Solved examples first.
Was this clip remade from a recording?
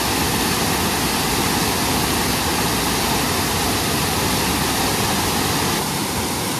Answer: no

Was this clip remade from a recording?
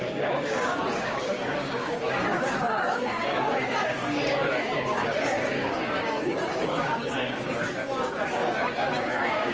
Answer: yes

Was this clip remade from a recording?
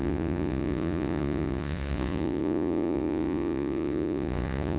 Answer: yes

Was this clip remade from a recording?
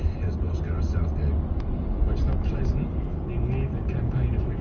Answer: no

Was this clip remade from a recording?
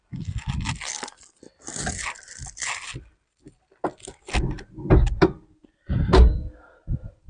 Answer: no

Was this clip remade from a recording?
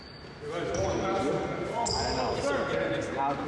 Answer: no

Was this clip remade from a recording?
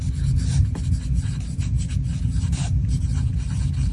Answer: no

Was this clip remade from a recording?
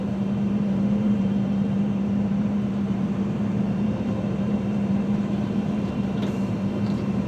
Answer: yes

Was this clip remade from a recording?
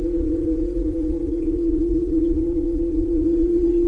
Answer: yes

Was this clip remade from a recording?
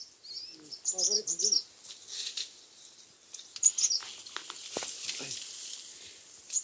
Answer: no